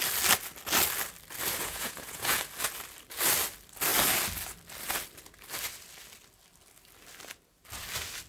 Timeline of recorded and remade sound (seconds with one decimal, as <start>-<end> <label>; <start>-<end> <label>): 0.0-1.6 recorded; 1.6-2.4 remade; 2.4-8.3 recorded